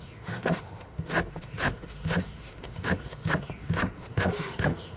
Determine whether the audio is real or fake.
fake